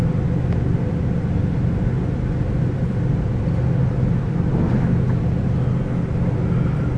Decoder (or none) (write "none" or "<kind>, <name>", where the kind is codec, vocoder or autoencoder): none